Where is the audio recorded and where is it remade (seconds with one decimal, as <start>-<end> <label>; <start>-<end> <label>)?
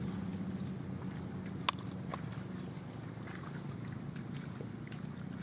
0.0-5.4 recorded